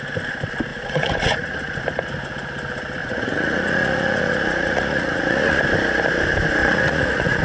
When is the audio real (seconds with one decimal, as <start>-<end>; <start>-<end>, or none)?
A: 0.0-0.7; 1.8-3.0; 5.6-6.6